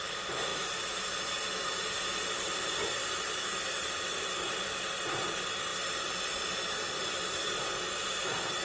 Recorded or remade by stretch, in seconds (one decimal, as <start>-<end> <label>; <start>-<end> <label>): 0.0-8.6 recorded